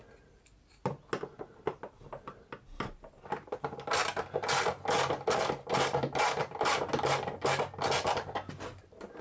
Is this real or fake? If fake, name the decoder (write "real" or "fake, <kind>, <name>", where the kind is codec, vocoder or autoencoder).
real